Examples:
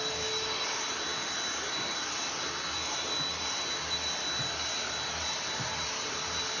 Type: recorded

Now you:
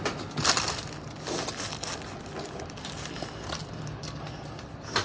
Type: recorded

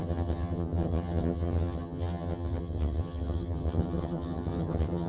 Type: remade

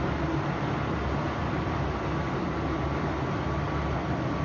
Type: recorded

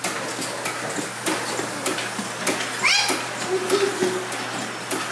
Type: recorded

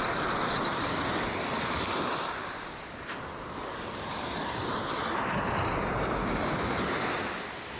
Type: recorded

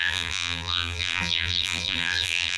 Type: remade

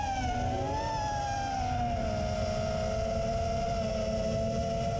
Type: recorded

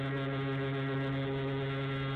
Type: recorded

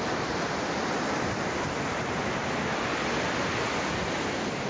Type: recorded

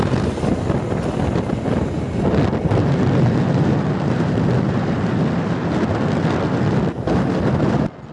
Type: recorded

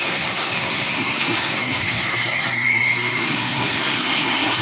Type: remade